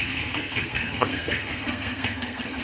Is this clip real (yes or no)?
no